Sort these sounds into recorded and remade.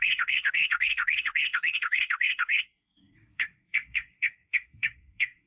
remade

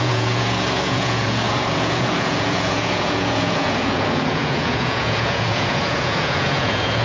remade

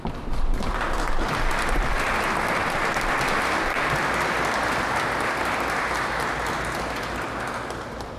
recorded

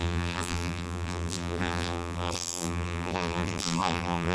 remade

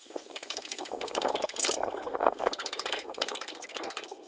remade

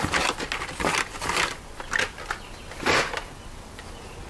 recorded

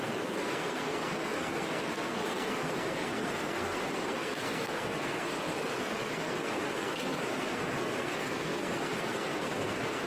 remade